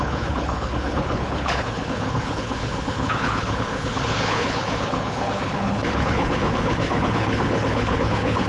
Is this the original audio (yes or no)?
no